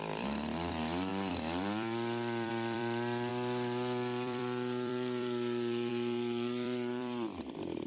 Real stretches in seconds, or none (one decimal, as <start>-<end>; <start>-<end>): none